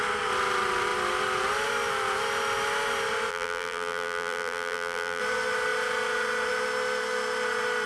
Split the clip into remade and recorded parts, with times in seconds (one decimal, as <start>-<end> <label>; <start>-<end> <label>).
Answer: 0.0-3.3 recorded; 3.3-5.2 remade; 5.2-7.9 recorded